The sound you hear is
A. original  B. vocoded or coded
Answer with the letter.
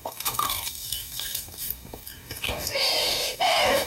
B